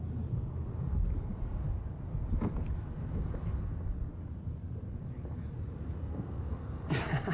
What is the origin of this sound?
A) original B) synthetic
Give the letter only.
A